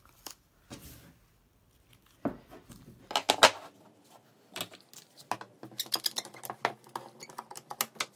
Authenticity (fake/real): real